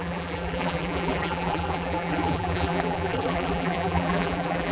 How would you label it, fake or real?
fake